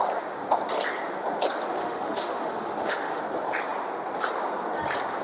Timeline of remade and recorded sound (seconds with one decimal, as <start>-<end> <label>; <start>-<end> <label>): 0.0-1.8 recorded; 1.8-3.2 remade; 3.2-5.2 recorded

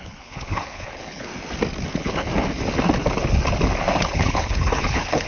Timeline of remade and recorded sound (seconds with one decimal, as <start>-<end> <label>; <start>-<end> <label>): 0.0-1.3 remade; 1.3-1.9 recorded; 1.9-2.3 remade; 2.3-4.0 recorded; 4.0-5.3 remade

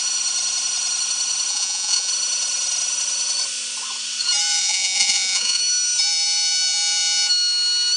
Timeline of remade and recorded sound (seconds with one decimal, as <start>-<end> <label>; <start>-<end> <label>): 0.0-1.5 recorded; 1.5-2.1 remade; 2.1-4.6 recorded; 4.6-5.6 remade; 5.6-8.0 recorded

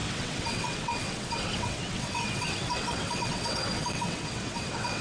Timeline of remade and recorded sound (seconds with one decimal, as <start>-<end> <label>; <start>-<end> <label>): 0.0-5.0 remade